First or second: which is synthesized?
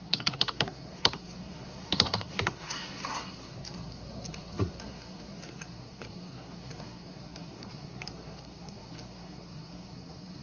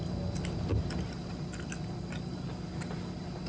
first